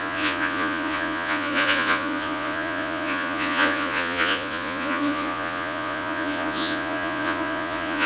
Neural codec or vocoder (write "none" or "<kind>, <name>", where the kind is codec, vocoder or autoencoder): vocoder, Vocos